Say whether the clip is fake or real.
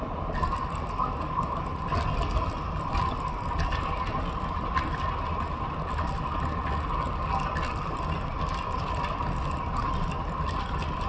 real